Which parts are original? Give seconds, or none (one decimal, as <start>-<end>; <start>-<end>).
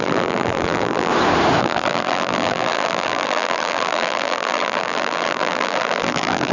1.1-1.6